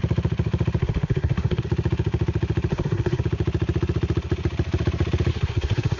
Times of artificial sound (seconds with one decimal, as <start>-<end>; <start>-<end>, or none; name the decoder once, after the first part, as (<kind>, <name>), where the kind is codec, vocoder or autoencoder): 0.8-1.6 (codec, SNAC); 2.7-3.2; 5.3-6.0